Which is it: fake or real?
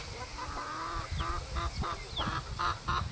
real